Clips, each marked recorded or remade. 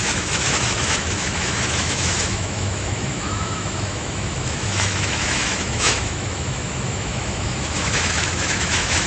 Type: remade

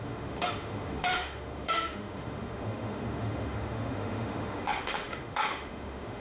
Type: remade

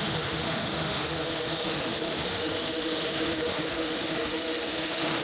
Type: remade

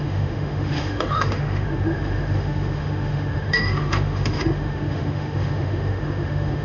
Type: remade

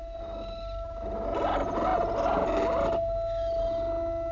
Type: recorded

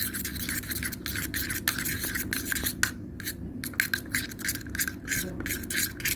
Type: recorded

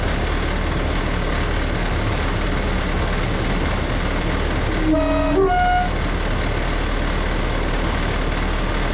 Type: recorded